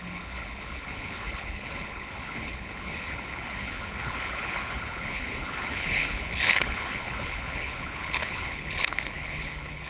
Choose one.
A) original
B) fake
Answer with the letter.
B